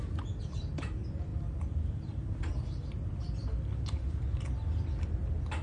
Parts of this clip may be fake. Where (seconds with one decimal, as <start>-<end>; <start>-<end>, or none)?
none